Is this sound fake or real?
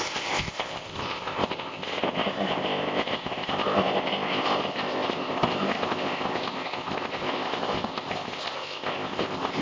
fake